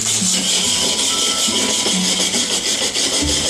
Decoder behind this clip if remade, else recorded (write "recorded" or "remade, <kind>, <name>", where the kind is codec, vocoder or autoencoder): recorded